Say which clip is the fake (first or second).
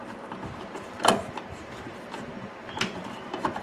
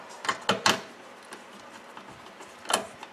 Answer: first